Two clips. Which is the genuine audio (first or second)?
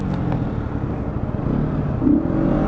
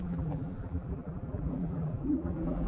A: first